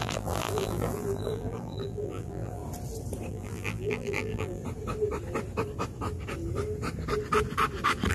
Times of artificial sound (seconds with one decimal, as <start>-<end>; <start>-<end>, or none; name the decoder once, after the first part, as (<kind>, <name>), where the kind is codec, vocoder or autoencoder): 0.0-2.6 (vocoder, BigVGAN v2); 3.3-4.6